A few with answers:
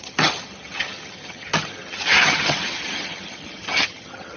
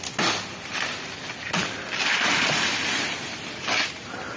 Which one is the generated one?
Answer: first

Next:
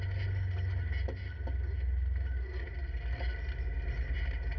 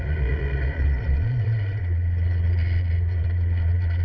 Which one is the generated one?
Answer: second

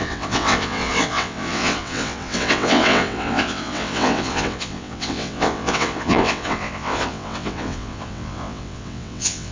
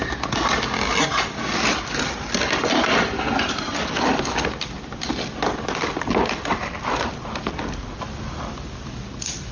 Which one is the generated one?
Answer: first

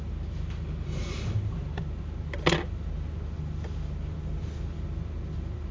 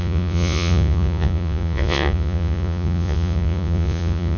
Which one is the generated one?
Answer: second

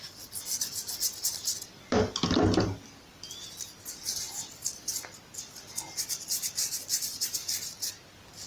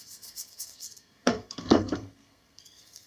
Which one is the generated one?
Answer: second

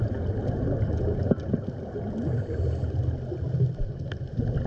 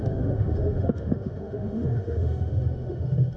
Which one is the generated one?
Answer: second